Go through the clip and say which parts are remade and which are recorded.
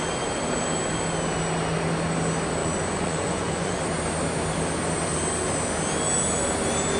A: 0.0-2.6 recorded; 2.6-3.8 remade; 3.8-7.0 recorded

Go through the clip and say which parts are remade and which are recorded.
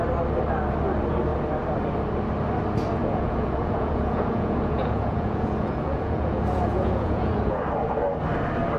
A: 0.0-3.0 recorded; 3.0-7.6 remade; 7.6-8.8 recorded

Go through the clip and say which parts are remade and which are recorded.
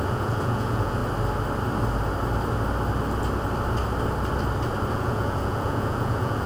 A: 0.0-1.0 remade; 1.0-4.9 recorded; 4.9-6.5 remade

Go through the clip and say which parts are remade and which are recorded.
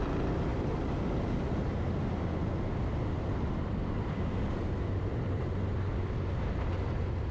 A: 0.0-7.3 recorded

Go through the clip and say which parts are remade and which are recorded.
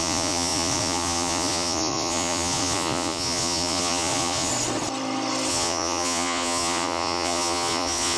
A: 0.0-4.5 remade; 4.5-5.5 recorded; 5.5-8.2 remade